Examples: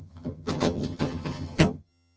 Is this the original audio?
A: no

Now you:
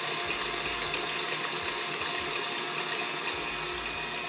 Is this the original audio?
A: yes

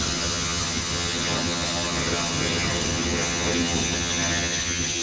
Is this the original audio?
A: no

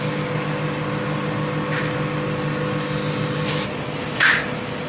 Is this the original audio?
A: yes